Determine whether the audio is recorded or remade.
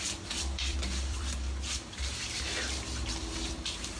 remade